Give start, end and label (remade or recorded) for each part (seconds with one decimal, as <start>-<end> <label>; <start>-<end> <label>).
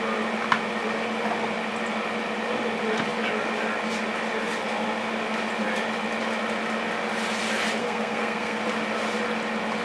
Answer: 0.0-7.8 recorded; 7.8-8.6 remade; 8.6-9.8 recorded